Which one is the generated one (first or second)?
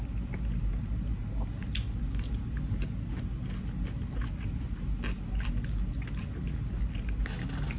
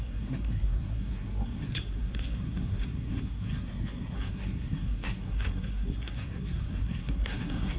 second